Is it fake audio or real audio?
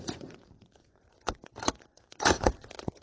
fake